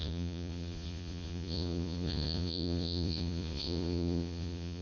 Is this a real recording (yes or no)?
no